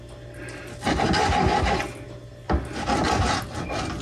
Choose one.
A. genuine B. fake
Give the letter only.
A